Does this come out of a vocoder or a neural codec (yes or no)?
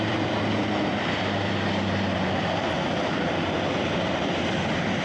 yes